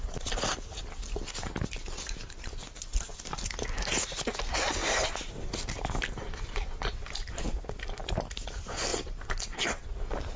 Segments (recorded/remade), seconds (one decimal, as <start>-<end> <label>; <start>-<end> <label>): 0.0-10.4 recorded